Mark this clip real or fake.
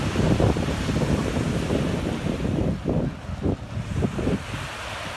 real